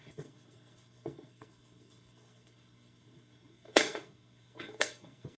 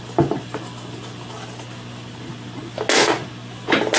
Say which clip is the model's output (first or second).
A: first